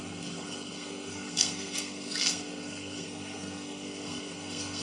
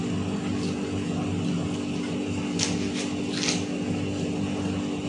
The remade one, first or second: first